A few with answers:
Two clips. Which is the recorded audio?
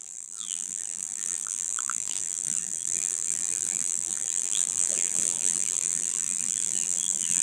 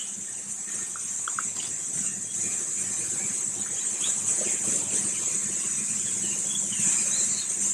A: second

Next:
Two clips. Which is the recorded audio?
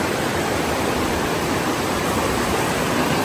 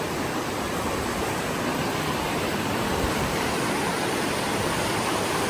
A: second